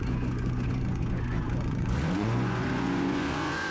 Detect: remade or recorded remade